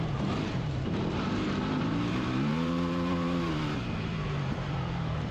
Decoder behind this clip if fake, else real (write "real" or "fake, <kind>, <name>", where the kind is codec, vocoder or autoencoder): fake, vocoder, BigVGAN v2